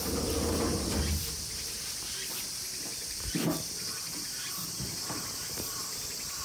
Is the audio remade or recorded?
recorded